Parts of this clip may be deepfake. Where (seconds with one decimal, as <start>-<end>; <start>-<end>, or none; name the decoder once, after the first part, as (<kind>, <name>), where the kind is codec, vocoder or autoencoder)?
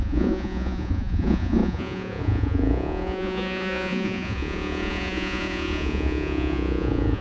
0.0-7.2 (vocoder, Vocos)